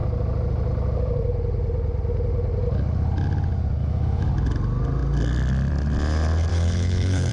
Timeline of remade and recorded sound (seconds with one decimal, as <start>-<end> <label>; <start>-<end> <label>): 0.0-3.8 recorded; 3.8-4.3 remade; 4.3-6.5 recorded; 6.5-7.3 remade